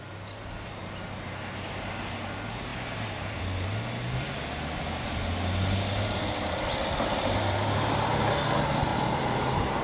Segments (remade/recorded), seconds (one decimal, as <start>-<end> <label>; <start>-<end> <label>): 0.0-2.7 recorded; 2.7-3.4 remade; 3.4-8.9 recorded; 8.9-9.8 remade